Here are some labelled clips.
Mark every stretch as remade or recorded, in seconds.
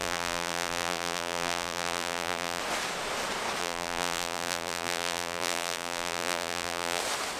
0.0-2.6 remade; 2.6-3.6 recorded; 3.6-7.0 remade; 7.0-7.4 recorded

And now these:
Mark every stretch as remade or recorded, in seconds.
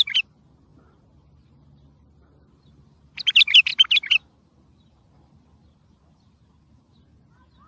0.0-3.7 recorded; 3.7-5.1 remade; 5.1-7.7 recorded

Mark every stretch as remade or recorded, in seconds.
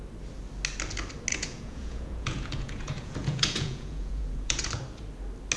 0.0-1.3 recorded; 1.3-4.7 remade; 4.7-5.6 recorded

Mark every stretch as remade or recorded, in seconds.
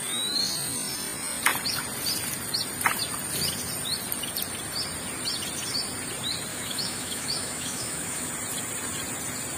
0.0-6.5 recorded; 6.5-8.3 remade; 8.3-9.6 recorded